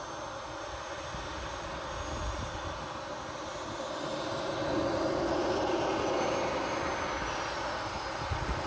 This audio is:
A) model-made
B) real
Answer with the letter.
B